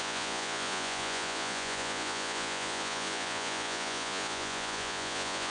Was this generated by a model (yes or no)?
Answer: yes